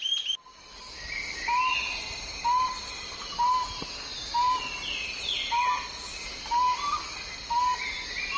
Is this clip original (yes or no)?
yes